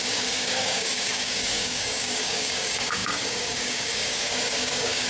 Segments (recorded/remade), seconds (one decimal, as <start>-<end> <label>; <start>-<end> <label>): 0.0-5.1 remade